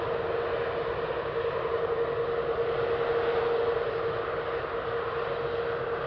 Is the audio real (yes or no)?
yes